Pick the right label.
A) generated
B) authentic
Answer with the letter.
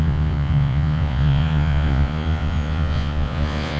A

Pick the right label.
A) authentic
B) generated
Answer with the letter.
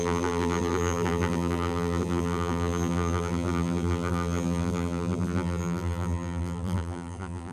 B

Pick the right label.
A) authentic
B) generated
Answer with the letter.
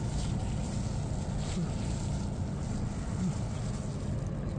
A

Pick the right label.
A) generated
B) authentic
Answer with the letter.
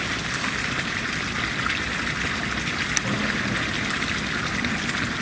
B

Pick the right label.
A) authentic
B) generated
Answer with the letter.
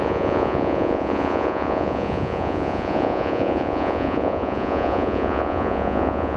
B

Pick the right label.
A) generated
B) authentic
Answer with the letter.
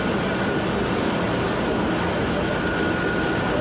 B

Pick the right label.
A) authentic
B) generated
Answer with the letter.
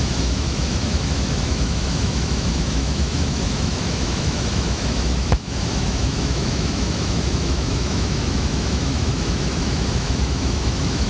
B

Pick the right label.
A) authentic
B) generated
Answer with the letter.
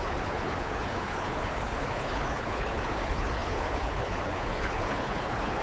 B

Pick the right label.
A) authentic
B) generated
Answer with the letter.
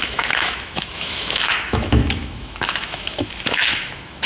B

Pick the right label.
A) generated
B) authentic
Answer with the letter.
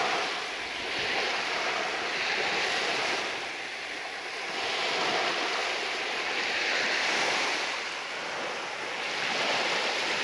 B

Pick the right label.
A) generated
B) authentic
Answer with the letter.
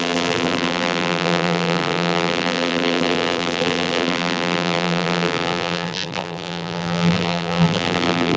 A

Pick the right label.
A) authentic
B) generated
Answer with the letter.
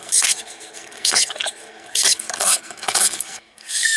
B